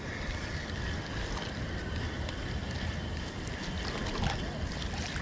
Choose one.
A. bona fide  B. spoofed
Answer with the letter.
A